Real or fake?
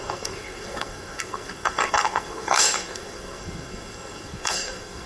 fake